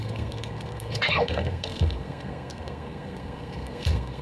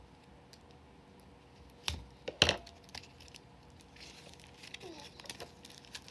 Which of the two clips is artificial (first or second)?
first